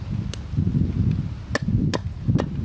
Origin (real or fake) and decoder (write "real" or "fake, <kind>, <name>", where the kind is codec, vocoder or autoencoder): real